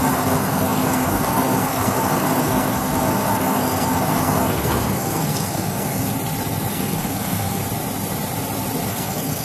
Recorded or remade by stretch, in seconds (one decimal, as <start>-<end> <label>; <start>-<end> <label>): 0.0-6.1 remade; 6.1-6.7 recorded; 6.7-7.6 remade; 7.6-8.9 recorded; 8.9-9.4 remade